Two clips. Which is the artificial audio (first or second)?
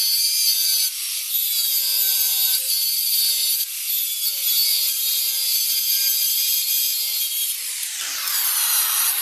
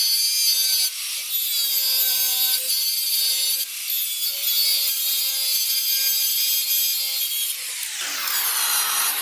first